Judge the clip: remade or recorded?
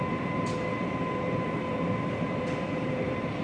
remade